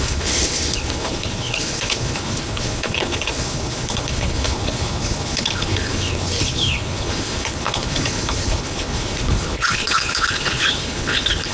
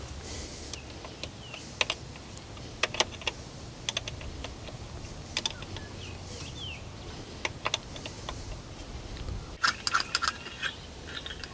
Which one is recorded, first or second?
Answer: second